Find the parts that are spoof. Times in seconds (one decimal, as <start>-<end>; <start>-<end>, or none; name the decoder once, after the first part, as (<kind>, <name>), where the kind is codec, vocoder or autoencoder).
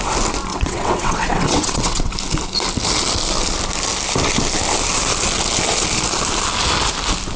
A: 0.5-2.1 (vocoder, WaveNeXt)